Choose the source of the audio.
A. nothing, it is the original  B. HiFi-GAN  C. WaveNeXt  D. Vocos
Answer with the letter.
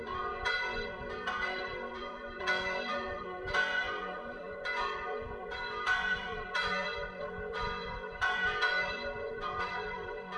D